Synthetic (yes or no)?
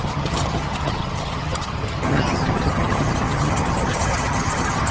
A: yes